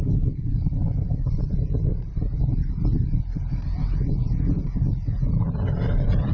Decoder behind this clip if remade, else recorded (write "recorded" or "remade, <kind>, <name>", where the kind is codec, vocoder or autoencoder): recorded